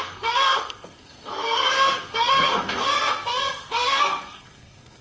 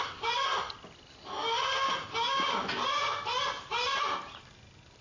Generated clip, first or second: first